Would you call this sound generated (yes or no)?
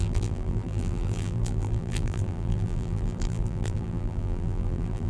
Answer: yes